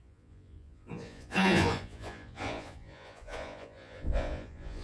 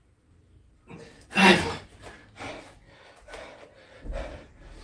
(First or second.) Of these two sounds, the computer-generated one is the first